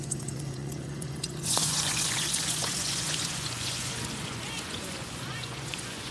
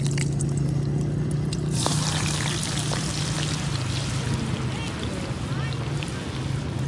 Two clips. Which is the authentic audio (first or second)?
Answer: second